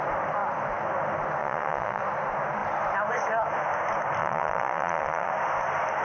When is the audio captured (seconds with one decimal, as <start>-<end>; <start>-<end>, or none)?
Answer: 0.0-1.4; 2.0-4.2; 5.3-6.0